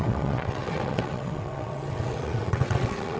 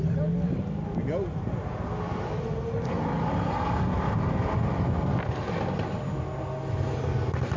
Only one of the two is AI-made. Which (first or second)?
first